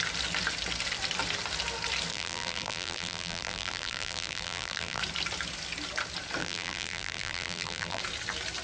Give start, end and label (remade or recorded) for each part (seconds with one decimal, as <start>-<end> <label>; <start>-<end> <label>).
0.0-2.1 recorded; 2.1-5.0 remade; 5.0-6.4 recorded; 6.4-8.0 remade; 8.0-8.6 recorded